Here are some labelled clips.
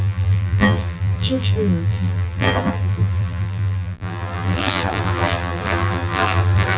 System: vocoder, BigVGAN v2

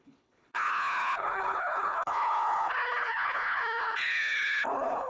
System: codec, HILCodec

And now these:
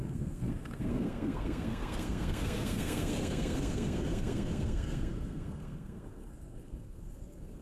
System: codec, SNAC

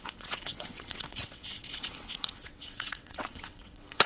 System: vocoder, WaveNeXt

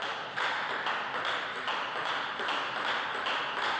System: none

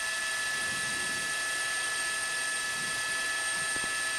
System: none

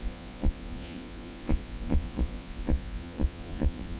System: vocoder, Vocos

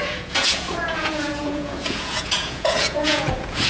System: vocoder, Vocos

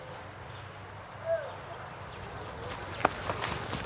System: none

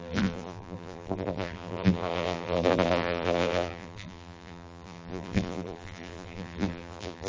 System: vocoder, BigVGAN v2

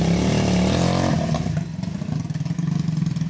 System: none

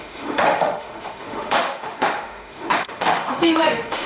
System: autoencoder, DAC-VAE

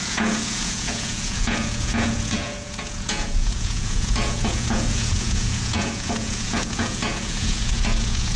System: vocoder, Vocos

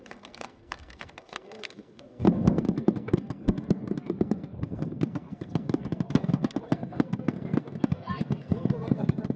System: codec, SNAC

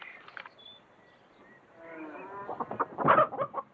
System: none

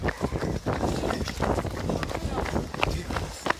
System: none